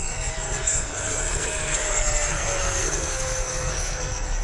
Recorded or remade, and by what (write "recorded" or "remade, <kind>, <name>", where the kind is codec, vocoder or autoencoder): remade, codec, SNAC